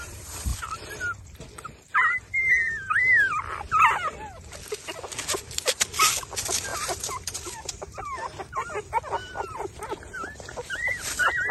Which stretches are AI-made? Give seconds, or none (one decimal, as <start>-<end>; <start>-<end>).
6.7-8.0